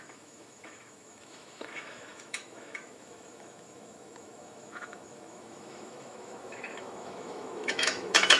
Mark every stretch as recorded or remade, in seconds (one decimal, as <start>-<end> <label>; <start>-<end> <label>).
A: 0.0-8.4 remade